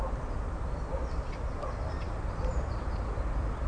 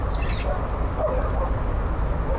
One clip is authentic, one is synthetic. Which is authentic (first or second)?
second